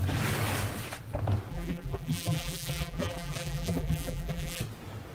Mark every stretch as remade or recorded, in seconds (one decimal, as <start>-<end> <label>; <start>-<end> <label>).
0.0-1.5 recorded; 1.5-4.6 remade; 4.6-5.1 recorded